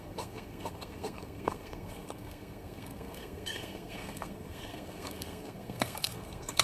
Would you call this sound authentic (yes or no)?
no